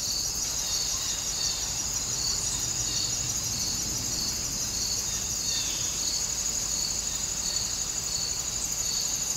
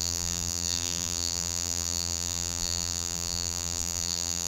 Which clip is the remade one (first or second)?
second